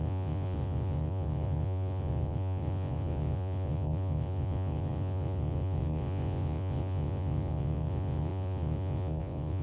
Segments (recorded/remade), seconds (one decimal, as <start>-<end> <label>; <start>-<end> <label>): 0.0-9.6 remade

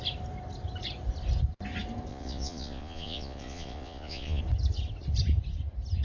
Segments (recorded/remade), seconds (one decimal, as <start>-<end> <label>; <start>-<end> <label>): 0.0-2.1 recorded; 2.1-4.4 remade; 4.4-6.0 recorded

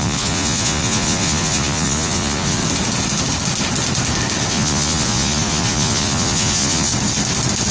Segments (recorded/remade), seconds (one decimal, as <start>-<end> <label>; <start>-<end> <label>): 0.0-2.6 remade; 2.6-4.5 recorded; 4.5-6.9 remade; 6.9-7.7 recorded